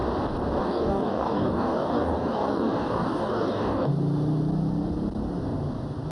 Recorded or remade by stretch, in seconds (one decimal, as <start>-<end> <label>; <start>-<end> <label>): 0.0-0.6 recorded; 0.6-3.9 remade; 3.9-6.1 recorded